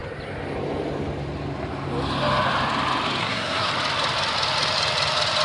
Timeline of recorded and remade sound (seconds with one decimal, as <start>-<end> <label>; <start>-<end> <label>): 0.0-3.2 recorded; 3.2-3.7 remade; 3.7-5.4 recorded